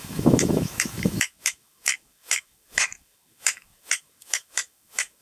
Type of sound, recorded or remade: remade